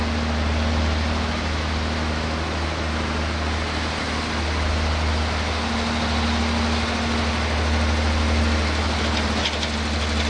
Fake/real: real